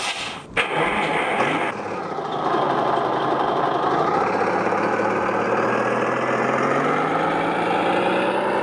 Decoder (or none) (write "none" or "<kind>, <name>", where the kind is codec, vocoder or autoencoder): none